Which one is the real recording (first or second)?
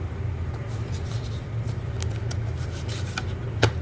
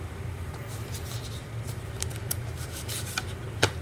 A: first